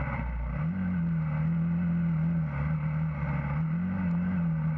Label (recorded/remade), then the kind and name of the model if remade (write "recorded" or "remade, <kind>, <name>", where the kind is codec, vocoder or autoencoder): recorded